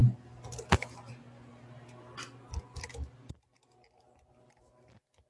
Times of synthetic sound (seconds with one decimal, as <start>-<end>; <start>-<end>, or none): 1.1-5.3